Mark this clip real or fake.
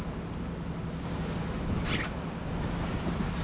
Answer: real